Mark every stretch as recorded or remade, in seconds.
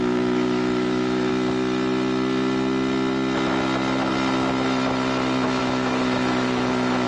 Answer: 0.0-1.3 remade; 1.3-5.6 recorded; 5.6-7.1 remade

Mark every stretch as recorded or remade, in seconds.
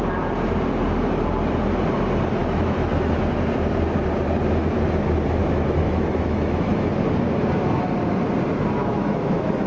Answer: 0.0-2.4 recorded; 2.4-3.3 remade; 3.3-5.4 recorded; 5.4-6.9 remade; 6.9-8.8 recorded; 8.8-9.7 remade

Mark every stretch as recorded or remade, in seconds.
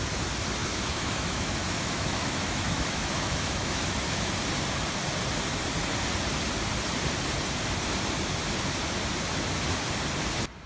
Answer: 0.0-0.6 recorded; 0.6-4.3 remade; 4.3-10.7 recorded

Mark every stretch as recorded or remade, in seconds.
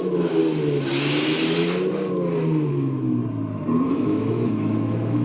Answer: 0.0-0.4 remade; 0.4-2.7 recorded; 2.7-3.2 remade; 3.2-3.9 recorded; 3.9-5.2 remade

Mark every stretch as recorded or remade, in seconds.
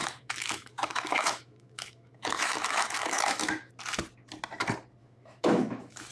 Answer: 0.0-3.7 remade; 3.7-5.0 recorded; 5.0-6.1 remade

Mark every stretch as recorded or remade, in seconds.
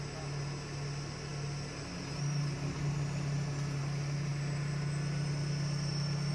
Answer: 0.0-6.3 recorded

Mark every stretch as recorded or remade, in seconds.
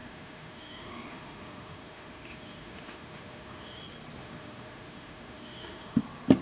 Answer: 0.0-3.8 remade; 3.8-4.2 recorded; 4.2-6.0 remade; 6.0-6.4 recorded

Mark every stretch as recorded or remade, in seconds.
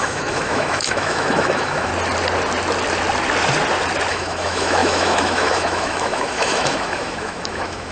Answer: 0.0-1.9 remade; 1.9-4.1 recorded; 4.1-7.9 remade